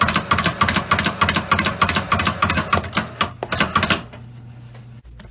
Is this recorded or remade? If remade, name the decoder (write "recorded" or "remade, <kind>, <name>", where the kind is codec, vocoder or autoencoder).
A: recorded